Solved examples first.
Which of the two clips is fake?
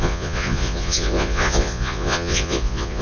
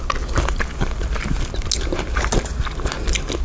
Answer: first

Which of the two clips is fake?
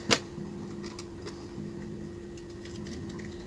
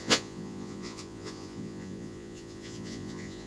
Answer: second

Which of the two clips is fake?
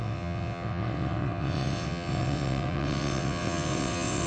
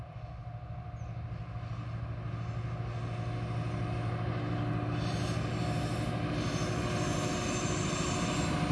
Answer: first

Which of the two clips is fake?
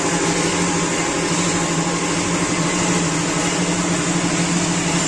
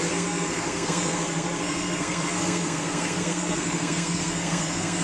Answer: second